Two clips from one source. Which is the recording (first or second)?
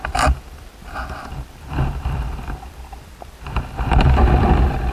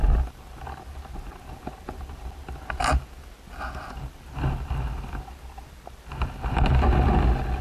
second